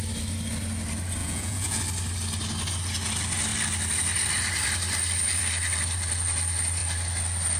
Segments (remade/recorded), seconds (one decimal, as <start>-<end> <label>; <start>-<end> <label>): 0.0-1.2 recorded; 1.2-1.8 remade; 1.8-7.6 recorded